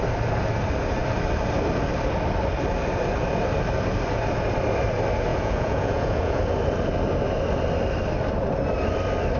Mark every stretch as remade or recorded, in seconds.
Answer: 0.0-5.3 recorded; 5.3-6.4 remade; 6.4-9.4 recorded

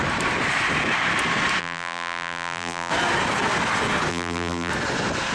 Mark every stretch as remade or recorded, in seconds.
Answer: 0.0-1.6 recorded; 1.6-2.9 remade; 2.9-4.1 recorded; 4.1-4.7 remade; 4.7-5.3 recorded